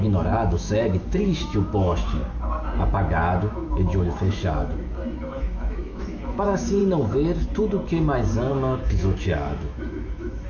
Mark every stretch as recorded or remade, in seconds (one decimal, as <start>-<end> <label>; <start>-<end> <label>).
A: 0.0-2.2 remade; 2.2-3.4 recorded; 3.4-6.8 remade; 6.8-8.5 recorded; 8.5-10.5 remade